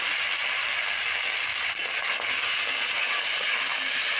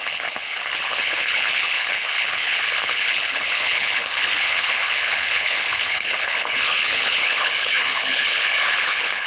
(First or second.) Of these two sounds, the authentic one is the first